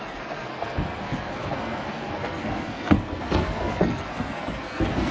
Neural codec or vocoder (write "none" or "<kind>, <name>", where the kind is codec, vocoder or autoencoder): codec, SNAC